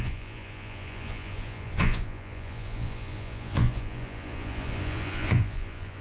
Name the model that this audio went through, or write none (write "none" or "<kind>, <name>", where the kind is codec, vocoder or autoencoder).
vocoder, Vocos